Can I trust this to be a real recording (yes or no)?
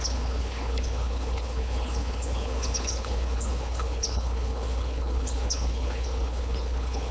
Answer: no